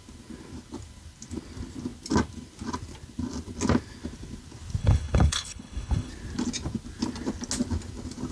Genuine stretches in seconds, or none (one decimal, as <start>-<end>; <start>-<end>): 0.0-4.8; 6.1-8.3